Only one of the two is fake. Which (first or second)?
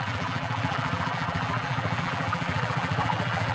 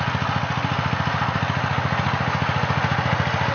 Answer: first